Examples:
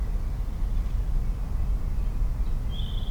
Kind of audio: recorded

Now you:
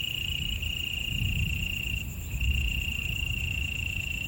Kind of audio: remade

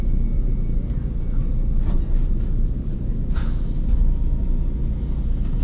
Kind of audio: recorded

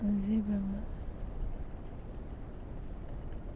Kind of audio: recorded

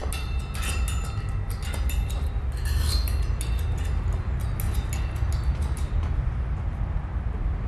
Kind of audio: recorded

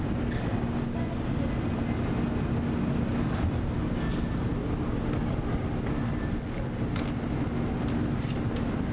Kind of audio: recorded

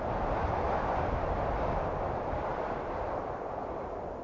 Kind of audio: recorded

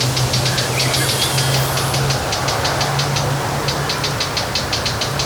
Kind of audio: recorded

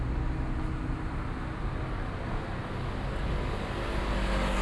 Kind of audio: recorded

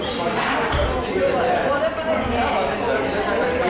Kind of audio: recorded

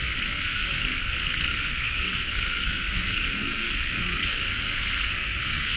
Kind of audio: remade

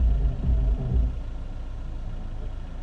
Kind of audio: recorded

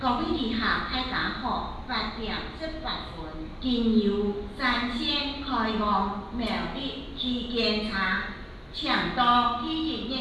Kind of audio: recorded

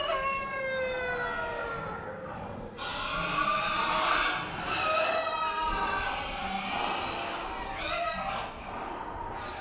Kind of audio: recorded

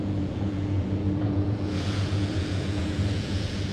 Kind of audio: remade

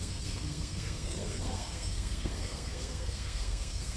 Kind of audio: remade